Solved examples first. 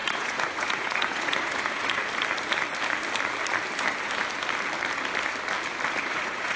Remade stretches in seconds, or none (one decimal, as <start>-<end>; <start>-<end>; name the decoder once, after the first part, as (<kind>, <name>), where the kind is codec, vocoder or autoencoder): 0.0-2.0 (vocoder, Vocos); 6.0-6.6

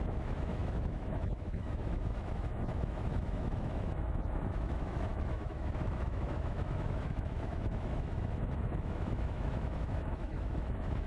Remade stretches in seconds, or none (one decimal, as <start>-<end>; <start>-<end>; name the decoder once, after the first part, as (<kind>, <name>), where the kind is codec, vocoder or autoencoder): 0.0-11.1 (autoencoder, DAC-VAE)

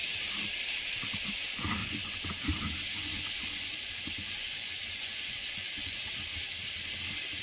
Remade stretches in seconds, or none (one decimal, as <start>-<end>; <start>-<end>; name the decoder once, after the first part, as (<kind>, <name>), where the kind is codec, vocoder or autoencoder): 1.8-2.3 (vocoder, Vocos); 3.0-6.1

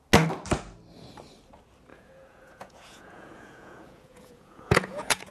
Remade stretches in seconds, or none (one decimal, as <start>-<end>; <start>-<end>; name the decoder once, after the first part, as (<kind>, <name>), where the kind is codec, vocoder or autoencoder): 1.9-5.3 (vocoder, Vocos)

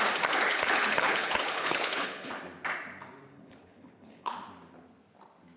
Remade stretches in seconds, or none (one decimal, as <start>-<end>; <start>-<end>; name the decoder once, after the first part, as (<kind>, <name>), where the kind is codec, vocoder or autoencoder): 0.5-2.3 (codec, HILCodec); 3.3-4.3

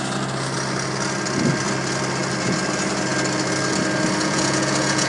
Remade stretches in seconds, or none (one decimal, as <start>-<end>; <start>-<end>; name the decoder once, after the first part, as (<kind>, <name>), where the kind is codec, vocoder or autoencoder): 4.2-5.1 (vocoder, Vocos)